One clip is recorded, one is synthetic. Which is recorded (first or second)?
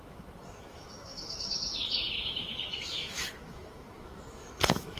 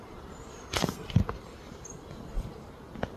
second